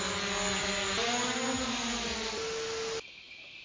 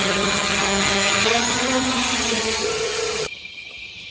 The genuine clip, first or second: first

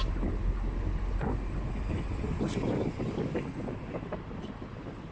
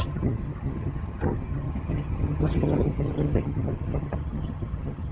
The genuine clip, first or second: first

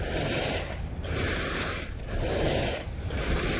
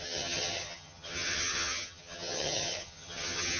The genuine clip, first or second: first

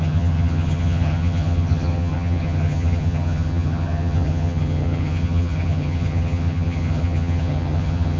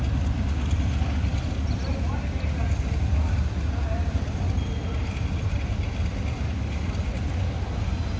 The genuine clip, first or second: second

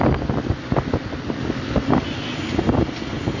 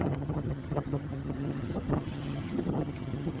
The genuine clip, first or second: first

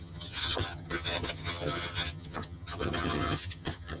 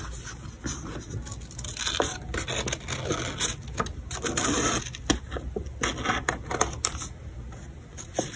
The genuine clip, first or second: second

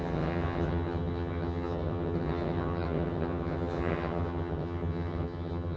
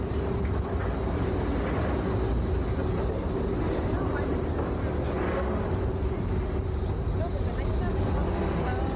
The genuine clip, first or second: second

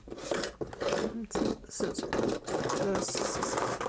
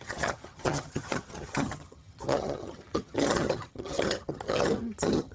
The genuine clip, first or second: first